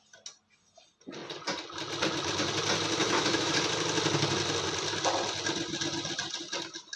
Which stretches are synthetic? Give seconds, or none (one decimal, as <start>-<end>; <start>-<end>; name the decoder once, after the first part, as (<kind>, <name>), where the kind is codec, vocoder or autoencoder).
3.0-3.5 (autoencoder, DAC-VAE)